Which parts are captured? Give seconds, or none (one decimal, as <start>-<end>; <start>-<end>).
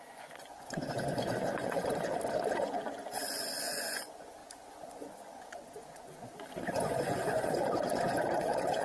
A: 2.1-2.6